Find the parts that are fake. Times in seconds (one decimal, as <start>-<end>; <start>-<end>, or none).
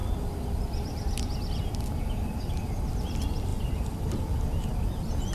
3.5-4.0